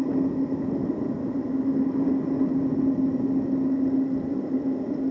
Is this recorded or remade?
recorded